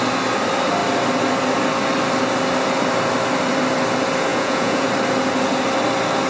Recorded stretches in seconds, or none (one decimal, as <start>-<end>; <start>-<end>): 0.0-4.3; 4.9-6.3